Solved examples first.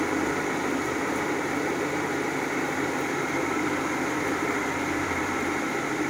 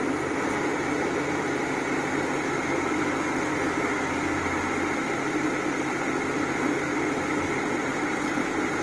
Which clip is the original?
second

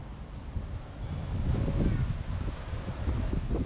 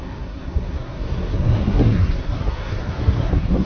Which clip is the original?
first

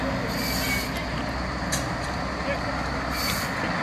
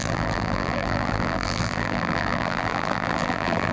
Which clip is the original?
first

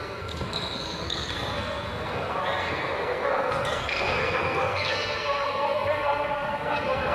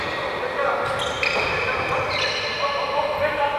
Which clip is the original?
second